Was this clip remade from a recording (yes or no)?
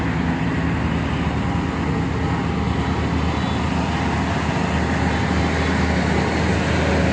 no